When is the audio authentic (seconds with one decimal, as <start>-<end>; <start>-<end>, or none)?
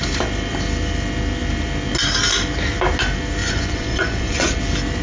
0.0-3.4; 4.6-5.0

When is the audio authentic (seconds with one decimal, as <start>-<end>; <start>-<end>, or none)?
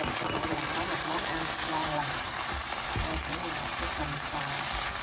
0.0-0.7; 1.2-1.7; 4.4-5.0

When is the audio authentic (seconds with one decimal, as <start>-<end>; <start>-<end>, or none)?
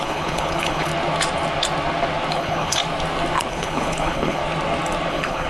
0.9-2.3; 2.8-3.5; 4.4-5.1